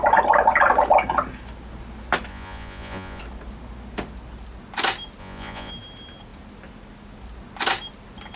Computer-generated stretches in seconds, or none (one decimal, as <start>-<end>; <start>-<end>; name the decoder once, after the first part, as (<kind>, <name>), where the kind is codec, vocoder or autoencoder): 2.3-3.2 (vocoder, Vocos); 5.2-5.7